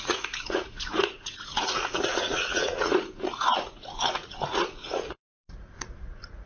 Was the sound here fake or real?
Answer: fake